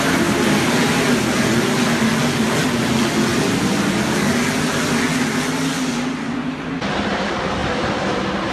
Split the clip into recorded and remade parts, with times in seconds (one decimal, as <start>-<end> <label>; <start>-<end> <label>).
0.0-8.5 recorded

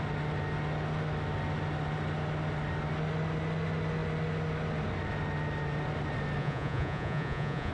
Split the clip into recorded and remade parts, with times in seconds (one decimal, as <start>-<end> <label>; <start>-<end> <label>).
0.0-6.4 recorded; 6.4-7.7 remade